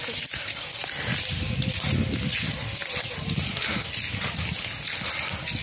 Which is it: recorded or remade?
recorded